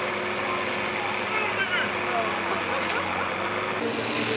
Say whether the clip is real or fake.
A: real